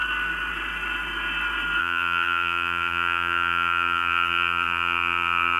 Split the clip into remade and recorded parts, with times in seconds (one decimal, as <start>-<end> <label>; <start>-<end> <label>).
0.0-1.8 recorded; 1.8-5.6 remade